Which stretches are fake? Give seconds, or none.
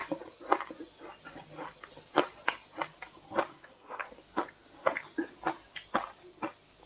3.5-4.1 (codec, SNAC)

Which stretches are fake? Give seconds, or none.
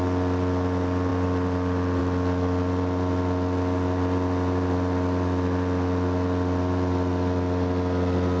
none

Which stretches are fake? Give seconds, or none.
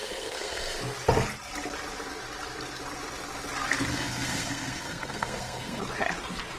0.0-0.8 (codec, SNAC); 3.9-5.8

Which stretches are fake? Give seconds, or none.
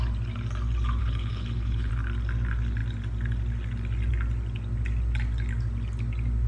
1.0-1.9 (codec, HILCodec)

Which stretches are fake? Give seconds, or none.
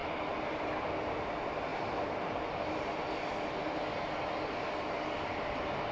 none